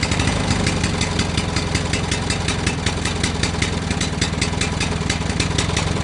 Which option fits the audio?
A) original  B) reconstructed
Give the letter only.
A